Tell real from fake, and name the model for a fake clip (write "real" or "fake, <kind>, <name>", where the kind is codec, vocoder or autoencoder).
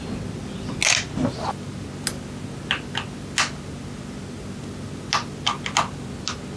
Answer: real